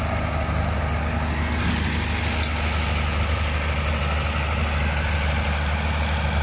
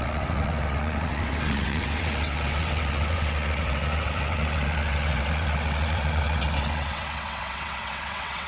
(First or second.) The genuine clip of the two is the first